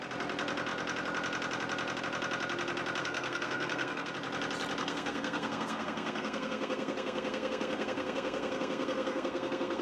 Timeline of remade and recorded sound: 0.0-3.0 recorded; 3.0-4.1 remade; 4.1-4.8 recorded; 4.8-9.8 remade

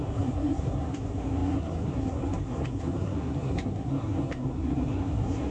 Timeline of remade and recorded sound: 0.0-5.5 remade